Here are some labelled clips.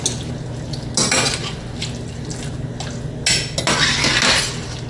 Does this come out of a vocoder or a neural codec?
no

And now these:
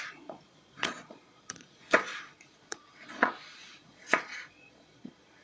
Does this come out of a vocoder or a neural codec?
yes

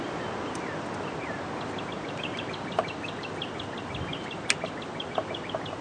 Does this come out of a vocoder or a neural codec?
no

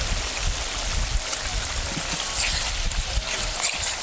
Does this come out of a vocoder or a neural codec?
no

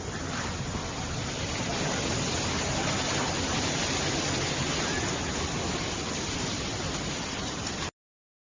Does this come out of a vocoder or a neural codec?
no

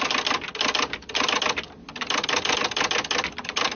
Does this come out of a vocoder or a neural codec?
no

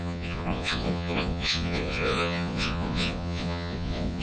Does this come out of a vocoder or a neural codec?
yes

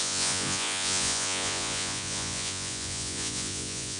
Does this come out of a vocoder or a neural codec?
yes